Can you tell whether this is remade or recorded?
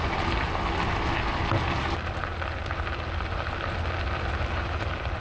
recorded